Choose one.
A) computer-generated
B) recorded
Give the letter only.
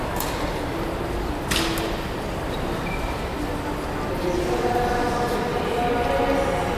B